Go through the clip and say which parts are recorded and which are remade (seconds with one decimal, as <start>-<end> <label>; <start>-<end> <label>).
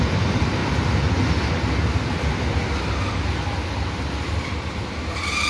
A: 0.0-0.6 remade; 0.6-3.9 recorded; 3.9-5.5 remade